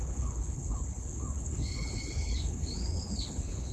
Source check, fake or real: fake